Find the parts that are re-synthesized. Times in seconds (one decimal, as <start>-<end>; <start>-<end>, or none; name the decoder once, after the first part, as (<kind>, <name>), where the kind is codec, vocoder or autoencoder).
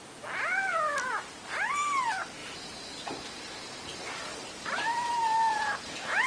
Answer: 2.4-6.3 (vocoder, BigVGAN v2)